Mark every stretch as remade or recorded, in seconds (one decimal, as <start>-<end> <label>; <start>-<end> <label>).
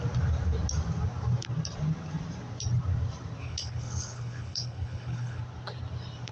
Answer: 0.0-3.4 recorded; 3.4-5.4 remade; 5.4-6.3 recorded